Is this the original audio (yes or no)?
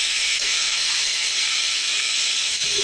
no